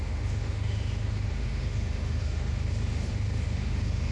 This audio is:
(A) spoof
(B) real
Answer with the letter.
A